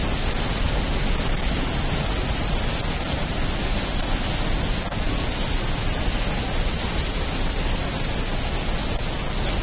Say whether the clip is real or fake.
real